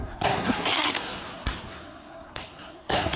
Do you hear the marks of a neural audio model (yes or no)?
yes